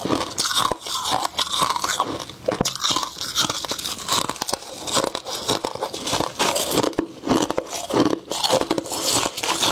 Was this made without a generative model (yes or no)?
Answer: yes